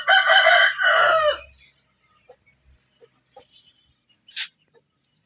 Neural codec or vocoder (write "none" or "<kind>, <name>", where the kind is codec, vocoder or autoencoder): none